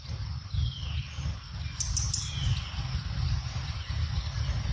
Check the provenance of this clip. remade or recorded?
recorded